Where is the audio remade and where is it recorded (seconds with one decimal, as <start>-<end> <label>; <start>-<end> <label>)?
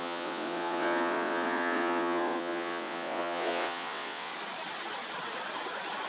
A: 0.0-4.3 remade; 4.3-6.1 recorded